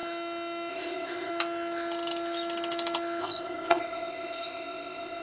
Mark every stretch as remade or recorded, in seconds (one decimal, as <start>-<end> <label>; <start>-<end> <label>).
0.0-0.7 recorded; 0.7-1.3 remade; 1.3-3.2 recorded; 3.2-5.2 remade